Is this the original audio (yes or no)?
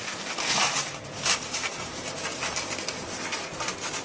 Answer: yes